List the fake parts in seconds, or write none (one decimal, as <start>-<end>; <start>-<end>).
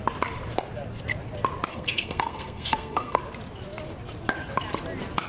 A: 1.7-3.2